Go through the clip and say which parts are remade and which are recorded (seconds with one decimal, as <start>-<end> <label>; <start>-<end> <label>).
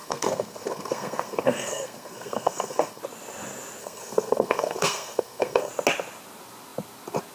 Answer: 0.0-3.0 remade; 3.0-3.8 recorded; 3.8-5.7 remade; 5.7-7.3 recorded